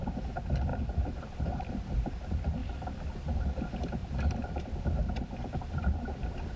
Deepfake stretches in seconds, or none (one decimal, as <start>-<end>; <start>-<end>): 0.7-1.4; 2.6-3.4; 4.0-4.8

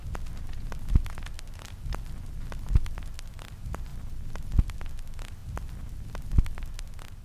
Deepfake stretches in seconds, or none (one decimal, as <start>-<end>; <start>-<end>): 0.6-3.9; 5.0-5.4; 6.4-7.2

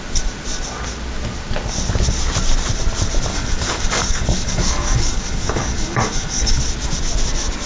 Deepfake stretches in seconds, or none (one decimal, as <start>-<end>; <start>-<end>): 3.3-6.6

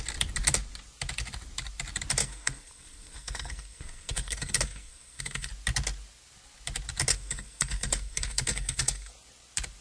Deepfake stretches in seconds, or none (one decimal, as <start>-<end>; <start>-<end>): 2.2-5.5; 7.1-9.1

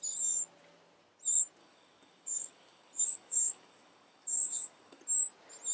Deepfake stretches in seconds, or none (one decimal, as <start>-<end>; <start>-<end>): 1.6-5.0

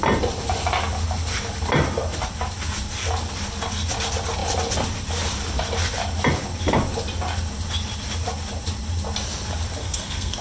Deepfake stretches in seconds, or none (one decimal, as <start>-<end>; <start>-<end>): 9.8-10.4

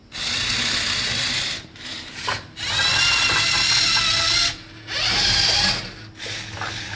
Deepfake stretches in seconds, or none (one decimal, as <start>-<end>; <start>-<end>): none